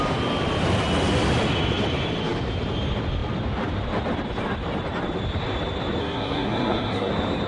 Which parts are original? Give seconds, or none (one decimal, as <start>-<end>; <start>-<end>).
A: 0.0-6.0; 7.1-7.5